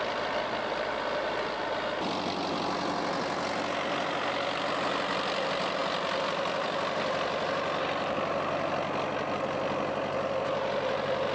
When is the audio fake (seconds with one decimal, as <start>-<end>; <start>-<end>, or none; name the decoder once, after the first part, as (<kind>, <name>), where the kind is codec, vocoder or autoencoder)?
none

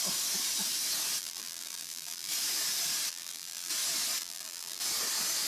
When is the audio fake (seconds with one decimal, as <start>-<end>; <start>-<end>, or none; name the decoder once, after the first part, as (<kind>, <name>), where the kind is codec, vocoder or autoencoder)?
1.2-2.3 (vocoder, BigVGAN v2); 3.1-3.7; 4.2-4.8